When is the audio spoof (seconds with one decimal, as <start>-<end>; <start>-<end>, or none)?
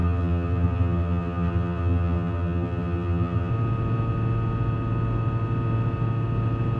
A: 0.0-3.5